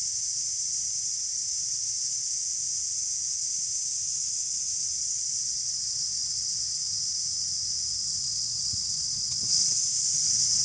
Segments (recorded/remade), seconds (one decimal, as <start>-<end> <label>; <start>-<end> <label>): 0.0-2.4 remade; 2.4-3.4 recorded; 3.4-6.8 remade; 6.8-8.0 recorded; 8.0-10.6 remade